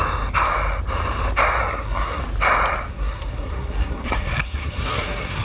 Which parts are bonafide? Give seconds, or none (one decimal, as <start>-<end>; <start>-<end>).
0.0-1.6; 2.2-2.9